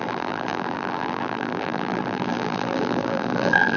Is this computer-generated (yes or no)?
yes